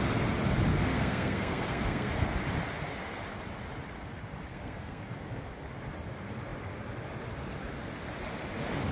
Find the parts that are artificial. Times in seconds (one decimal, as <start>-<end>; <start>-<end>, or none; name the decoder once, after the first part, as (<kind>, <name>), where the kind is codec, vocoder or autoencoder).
0.7-2.1 (codec, SNAC); 4.5-5.0